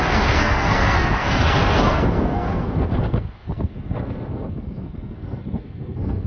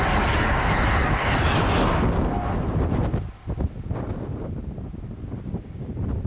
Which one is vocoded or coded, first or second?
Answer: first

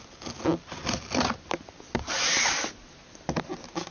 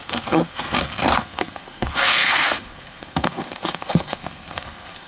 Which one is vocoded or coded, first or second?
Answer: second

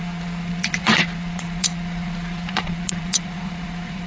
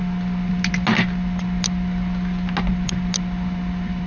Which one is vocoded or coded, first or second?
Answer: first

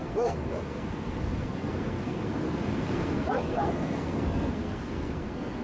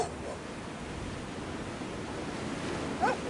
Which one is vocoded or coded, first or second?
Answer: first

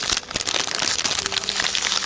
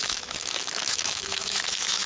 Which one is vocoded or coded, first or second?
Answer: second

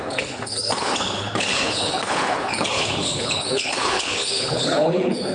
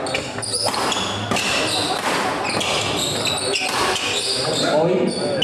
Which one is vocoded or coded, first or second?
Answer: first